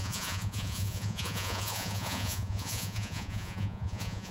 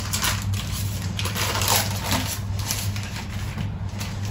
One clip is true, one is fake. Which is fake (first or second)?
first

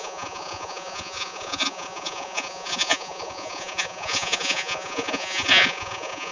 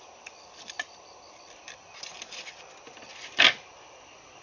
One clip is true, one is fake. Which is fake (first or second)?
first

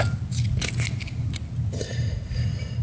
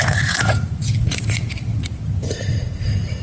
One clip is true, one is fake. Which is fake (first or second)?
second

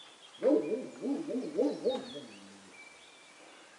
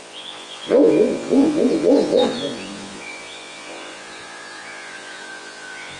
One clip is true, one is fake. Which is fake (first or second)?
second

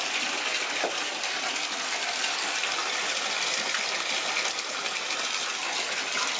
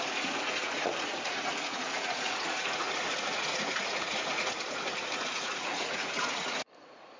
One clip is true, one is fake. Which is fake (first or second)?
second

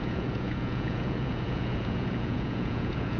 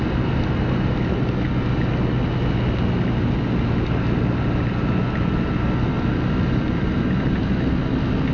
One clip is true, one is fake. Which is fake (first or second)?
first